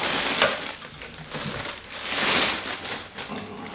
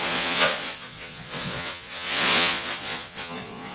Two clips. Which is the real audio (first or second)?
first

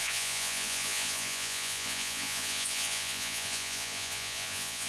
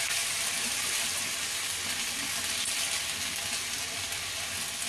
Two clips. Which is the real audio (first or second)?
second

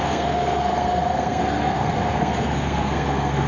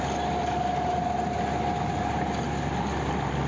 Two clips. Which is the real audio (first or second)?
second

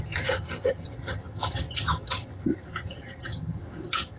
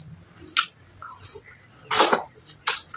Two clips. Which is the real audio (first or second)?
second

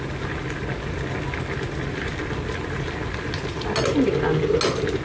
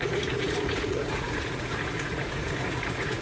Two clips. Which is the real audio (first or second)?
first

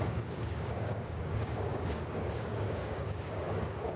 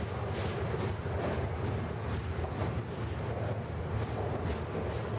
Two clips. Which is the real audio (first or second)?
second